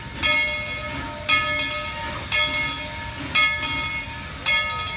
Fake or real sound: real